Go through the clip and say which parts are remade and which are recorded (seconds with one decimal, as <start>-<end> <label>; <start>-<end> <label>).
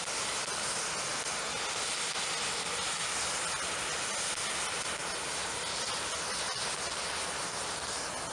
0.0-8.3 recorded